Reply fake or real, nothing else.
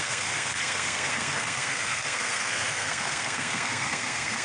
fake